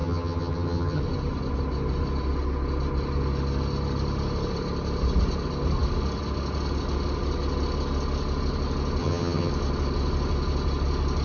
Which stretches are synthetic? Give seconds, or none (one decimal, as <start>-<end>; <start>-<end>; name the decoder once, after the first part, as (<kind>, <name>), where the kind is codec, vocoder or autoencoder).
0.0-1.0 (vocoder, HiFi-GAN); 9.0-9.5